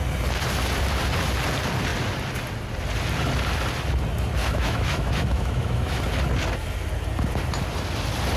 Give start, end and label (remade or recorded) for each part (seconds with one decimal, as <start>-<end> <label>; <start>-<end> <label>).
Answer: 0.0-4.4 recorded; 4.4-6.0 remade; 6.0-8.4 recorded